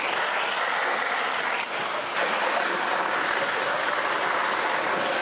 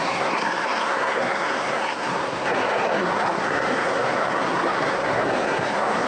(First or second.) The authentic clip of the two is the first